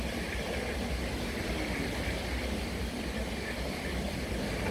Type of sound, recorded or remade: remade